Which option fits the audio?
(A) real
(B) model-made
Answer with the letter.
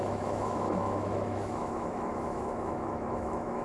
B